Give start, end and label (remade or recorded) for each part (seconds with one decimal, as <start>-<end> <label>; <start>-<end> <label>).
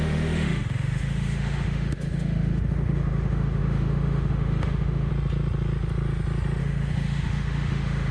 0.0-5.1 remade; 5.1-6.6 recorded; 6.6-8.1 remade